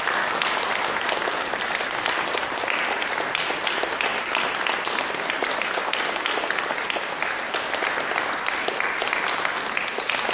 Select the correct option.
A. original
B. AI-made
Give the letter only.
A